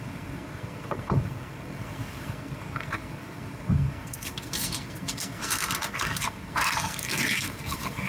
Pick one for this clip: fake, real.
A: fake